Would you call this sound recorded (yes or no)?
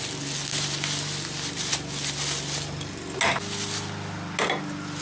yes